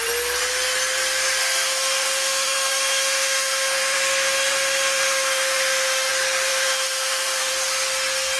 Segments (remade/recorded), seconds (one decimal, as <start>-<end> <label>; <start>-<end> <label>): 0.0-1.4 recorded; 1.4-6.1 remade; 6.1-6.5 recorded; 6.5-7.5 remade; 7.5-8.4 recorded